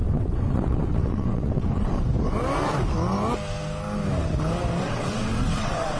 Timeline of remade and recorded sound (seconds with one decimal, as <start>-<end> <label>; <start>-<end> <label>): 0.0-2.1 remade; 2.1-4.8 recorded; 4.8-6.0 remade